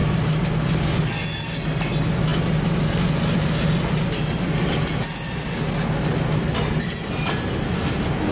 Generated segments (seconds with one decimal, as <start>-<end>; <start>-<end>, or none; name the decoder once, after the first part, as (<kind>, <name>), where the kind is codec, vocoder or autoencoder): none